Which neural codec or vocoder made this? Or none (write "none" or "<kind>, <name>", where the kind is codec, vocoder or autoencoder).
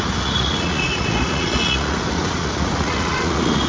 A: vocoder, Vocos